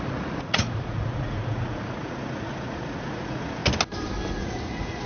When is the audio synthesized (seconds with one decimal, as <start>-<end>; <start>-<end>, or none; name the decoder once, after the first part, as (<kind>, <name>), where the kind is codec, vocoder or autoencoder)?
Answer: 0.0-3.6 (vocoder, Vocos); 4.4-5.1